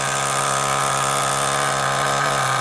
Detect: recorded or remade recorded